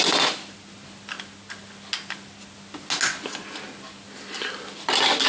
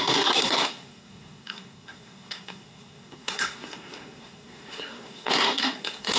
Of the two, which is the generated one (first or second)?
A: second